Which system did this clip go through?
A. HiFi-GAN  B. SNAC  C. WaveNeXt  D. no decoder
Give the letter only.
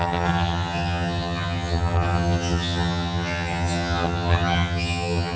A